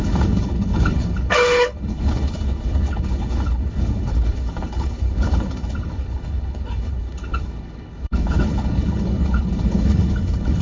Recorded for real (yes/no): no